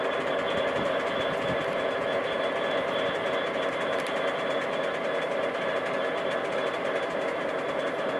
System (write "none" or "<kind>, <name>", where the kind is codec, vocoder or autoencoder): none